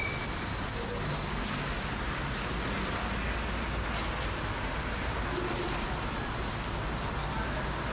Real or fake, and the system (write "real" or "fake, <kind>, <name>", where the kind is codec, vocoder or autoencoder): real